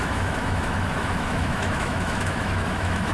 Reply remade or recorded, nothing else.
remade